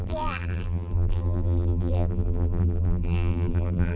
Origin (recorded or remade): remade